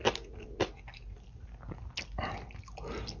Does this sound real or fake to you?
real